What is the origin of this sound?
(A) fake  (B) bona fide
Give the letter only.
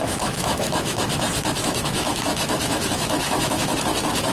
A